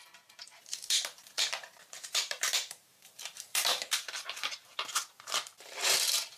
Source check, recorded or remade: remade